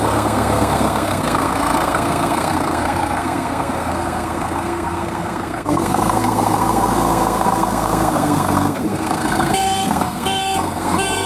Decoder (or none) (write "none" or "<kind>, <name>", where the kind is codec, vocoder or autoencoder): codec, SNAC